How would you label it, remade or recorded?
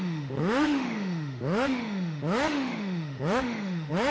remade